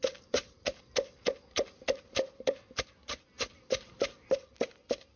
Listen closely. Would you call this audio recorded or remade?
recorded